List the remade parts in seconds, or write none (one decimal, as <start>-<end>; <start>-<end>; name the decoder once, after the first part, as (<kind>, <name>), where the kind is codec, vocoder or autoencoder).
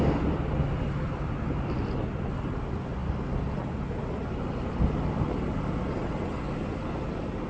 none